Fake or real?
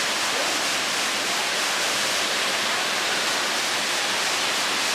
real